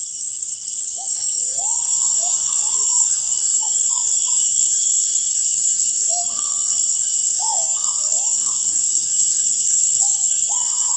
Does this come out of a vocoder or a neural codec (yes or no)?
yes